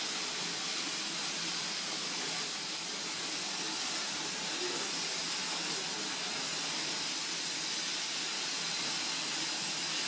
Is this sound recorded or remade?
recorded